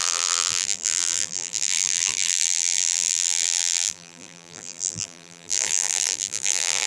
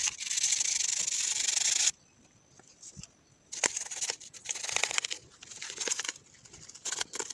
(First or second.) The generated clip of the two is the first